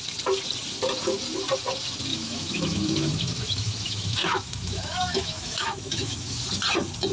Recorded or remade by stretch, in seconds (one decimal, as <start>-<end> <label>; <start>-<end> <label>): 0.0-2.1 recorded; 2.1-6.4 remade; 6.4-7.1 recorded